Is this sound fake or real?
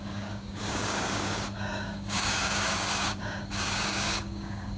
fake